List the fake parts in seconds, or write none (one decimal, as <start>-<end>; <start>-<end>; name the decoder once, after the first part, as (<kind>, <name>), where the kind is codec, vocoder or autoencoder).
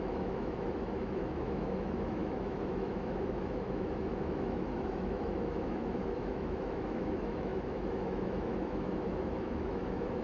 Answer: 0.0-10.2 (autoencoder, DAC-VAE)